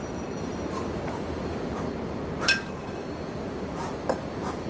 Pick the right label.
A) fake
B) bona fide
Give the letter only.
B